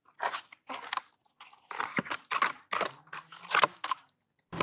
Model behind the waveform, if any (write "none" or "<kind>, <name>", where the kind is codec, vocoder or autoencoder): none